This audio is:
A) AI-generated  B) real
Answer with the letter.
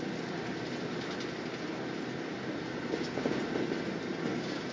B